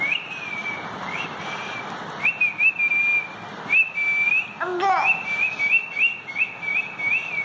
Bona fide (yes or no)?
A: yes